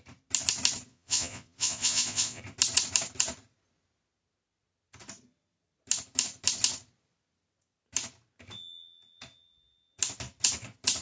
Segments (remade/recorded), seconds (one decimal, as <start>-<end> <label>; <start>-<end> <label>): 0.0-0.9 recorded; 0.9-2.4 remade; 2.4-11.0 recorded